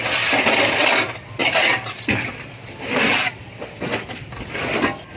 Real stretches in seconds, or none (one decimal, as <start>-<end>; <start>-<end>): 0.0-1.4; 4.3-5.2